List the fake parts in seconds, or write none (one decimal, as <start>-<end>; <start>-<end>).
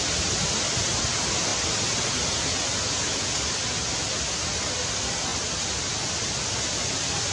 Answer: none